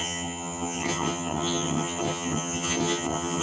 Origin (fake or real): fake